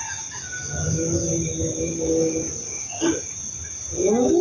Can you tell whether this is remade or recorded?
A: recorded